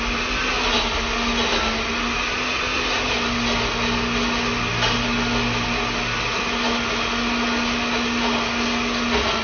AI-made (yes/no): no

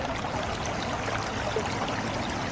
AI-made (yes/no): no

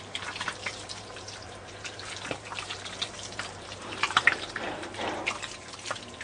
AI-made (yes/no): yes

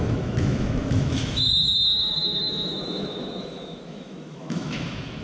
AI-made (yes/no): yes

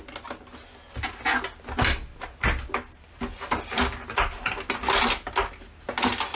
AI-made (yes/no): no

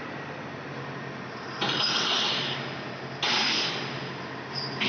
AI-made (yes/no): no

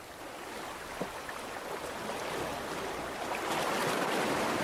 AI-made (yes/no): no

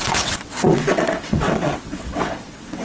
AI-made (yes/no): yes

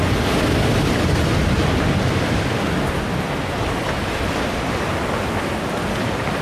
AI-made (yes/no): no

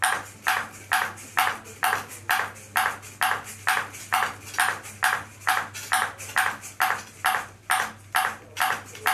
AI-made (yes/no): no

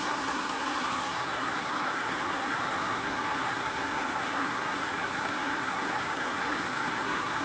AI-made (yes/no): yes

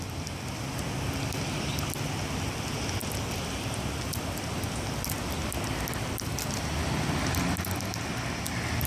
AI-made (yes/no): no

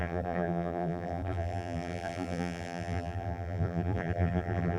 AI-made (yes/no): yes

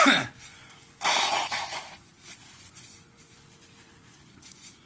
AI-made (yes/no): yes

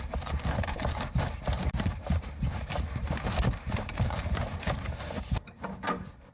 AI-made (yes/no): yes